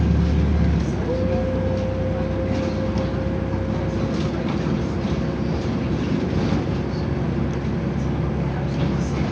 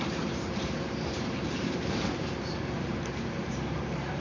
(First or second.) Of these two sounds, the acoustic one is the first